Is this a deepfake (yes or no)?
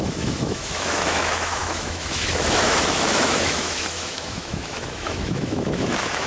yes